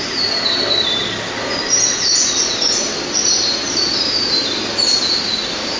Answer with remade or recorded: recorded